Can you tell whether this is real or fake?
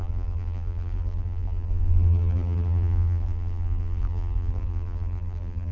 fake